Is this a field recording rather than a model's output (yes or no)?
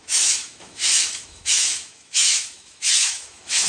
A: no